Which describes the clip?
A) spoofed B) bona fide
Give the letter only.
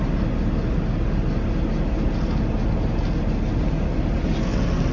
B